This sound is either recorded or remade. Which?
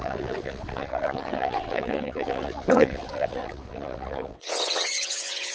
remade